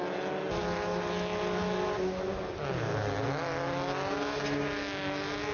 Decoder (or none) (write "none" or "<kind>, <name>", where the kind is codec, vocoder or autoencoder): none